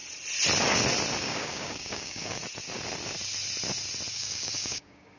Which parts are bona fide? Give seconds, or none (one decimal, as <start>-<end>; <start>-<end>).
0.0-1.2; 2.4-4.1